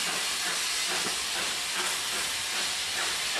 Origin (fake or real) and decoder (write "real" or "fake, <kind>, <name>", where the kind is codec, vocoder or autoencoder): real